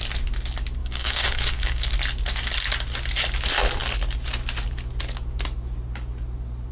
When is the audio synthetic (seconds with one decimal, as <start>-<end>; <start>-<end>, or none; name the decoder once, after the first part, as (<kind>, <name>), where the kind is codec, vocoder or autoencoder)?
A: 0.8-1.9 (codec, DAC)

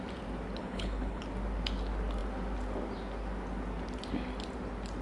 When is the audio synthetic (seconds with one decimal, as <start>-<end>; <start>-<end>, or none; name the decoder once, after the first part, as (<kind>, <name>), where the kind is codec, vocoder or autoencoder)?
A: 0.6-1.2 (codec, HILCodec)

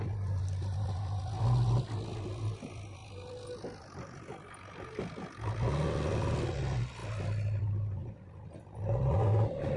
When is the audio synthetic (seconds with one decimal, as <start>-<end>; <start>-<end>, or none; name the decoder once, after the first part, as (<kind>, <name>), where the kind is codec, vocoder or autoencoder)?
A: none